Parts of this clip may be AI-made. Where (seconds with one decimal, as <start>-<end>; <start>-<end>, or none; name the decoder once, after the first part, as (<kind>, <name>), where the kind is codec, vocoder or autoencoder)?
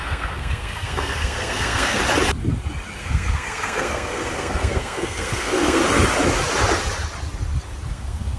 0.0-2.0 (codec, SNAC); 3.0-5.8; 7.9-8.4